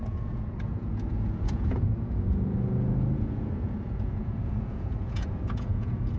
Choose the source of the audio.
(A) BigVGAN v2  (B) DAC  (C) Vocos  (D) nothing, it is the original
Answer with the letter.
C